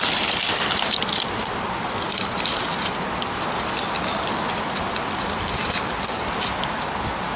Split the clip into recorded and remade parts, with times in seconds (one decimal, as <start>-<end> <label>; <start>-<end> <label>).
0.0-7.4 recorded